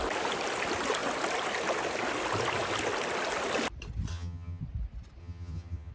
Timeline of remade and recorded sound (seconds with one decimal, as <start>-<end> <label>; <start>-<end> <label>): 0.0-4.1 recorded; 4.1-4.6 remade; 4.6-5.2 recorded; 5.2-5.9 remade